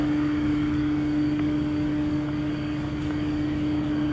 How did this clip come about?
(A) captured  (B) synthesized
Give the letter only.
B